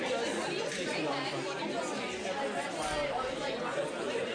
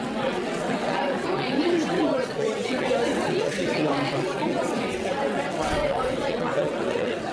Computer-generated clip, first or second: second